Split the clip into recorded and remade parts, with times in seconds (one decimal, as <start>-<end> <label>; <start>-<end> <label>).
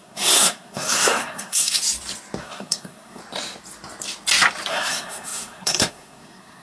0.0-1.8 remade; 1.8-2.4 recorded; 2.4-3.2 remade; 3.2-4.7 recorded; 4.7-6.6 remade